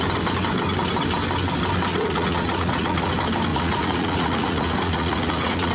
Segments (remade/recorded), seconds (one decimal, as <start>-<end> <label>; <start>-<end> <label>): 0.0-1.9 recorded; 1.9-3.1 remade; 3.1-3.5 recorded; 3.5-5.7 remade